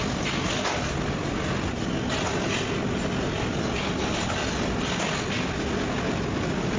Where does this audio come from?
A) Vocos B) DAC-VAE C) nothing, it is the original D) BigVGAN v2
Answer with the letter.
C